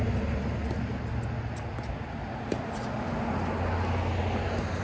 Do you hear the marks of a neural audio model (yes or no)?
no